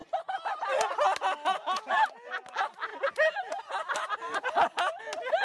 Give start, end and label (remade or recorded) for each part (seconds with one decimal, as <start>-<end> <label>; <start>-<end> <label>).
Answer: 0.0-5.4 recorded